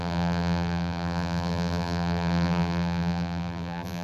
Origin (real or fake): fake